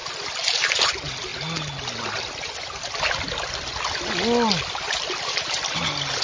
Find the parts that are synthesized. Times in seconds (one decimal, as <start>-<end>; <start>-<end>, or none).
none